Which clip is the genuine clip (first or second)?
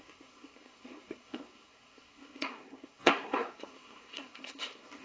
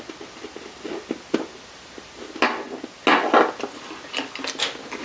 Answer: second